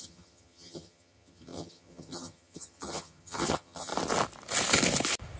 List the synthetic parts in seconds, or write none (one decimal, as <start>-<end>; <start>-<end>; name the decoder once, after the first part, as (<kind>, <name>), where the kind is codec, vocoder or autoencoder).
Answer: 0.0-3.9 (vocoder, HiFi-GAN)